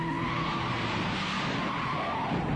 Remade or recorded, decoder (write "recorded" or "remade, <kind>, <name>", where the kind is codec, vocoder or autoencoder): recorded